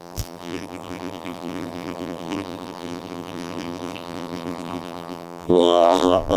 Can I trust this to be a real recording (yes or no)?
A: no